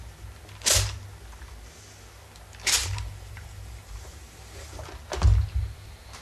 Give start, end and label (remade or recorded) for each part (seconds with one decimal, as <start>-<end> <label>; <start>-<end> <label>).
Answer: 0.0-2.8 recorded; 2.8-4.9 remade; 4.9-6.2 recorded